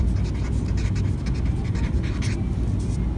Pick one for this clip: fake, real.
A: real